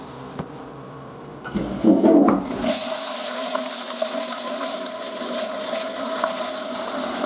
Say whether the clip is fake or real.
real